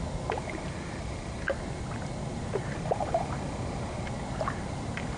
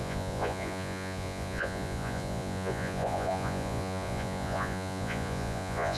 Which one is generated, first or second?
second